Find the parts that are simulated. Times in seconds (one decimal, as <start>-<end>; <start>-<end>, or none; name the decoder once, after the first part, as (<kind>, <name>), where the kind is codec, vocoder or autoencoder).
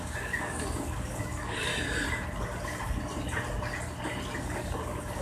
0.0-1.7 (codec, DAC); 4.4-5.2